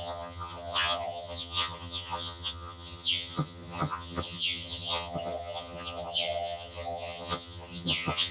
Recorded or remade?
remade